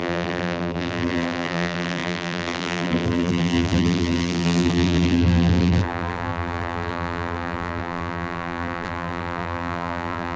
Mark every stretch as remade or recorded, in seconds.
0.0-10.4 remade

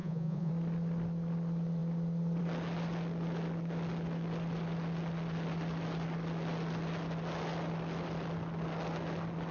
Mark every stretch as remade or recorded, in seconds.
0.0-0.5 remade; 0.5-9.5 recorded

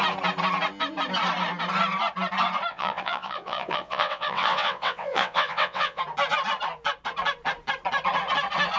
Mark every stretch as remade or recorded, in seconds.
0.0-2.7 recorded; 2.7-6.0 remade; 6.0-8.8 recorded

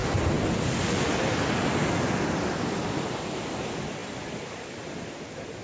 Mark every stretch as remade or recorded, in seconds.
0.0-4.0 recorded; 4.0-5.6 remade

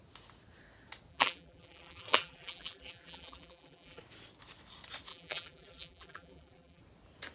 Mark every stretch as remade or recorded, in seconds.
0.0-1.1 recorded; 1.1-4.0 remade; 4.0-5.1 recorded; 5.1-6.8 remade; 6.8-7.3 recorded

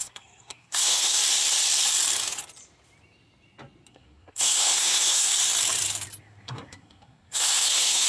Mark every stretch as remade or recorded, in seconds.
0.0-1.2 remade; 1.2-3.9 recorded; 3.9-5.3 remade; 5.3-6.2 recorded; 6.2-8.1 remade

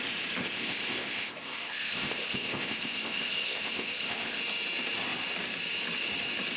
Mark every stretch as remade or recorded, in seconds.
0.0-0.4 recorded; 0.4-4.4 remade; 4.4-6.6 recorded

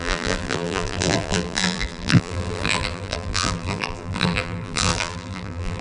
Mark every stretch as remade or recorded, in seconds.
0.0-5.8 remade